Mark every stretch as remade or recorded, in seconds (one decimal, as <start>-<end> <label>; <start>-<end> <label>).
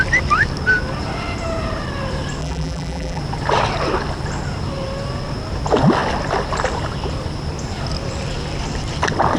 0.0-2.4 recorded; 2.4-3.2 remade; 3.2-9.4 recorded